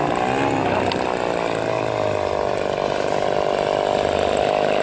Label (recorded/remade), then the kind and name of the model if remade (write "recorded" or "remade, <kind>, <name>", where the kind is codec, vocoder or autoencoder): recorded